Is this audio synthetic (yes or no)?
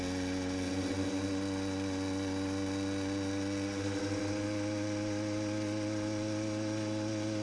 no